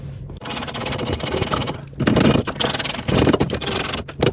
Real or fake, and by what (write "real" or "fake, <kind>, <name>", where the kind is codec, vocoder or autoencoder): real